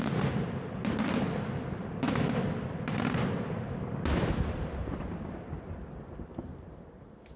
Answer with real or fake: fake